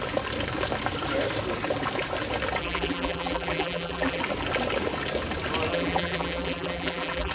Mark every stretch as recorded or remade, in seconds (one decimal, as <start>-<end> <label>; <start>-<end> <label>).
0.0-2.6 recorded; 2.6-4.2 remade; 4.2-5.7 recorded; 5.7-7.3 remade